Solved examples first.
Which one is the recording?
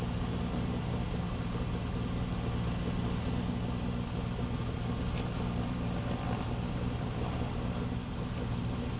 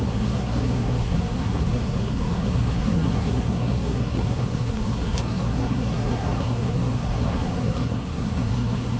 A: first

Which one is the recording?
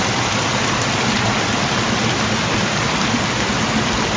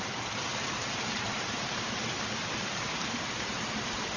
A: first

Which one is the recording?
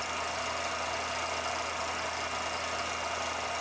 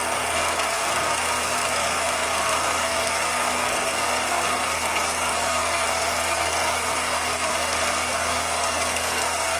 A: first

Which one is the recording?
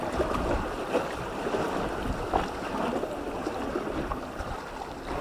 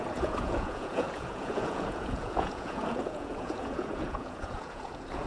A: first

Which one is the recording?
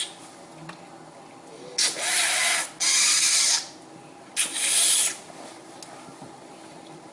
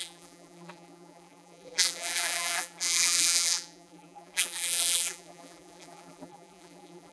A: first